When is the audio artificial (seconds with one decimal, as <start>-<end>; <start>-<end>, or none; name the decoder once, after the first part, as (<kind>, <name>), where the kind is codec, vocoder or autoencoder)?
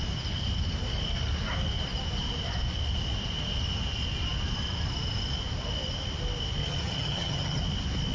6.6-7.6 (vocoder, HiFi-GAN)